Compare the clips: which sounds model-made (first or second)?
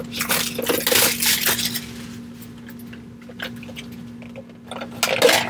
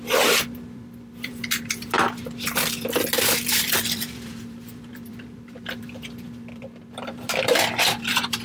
second